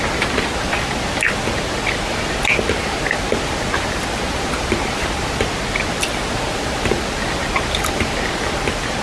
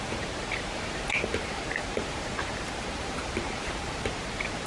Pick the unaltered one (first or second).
first